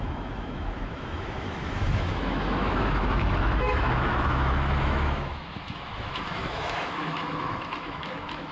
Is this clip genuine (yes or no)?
no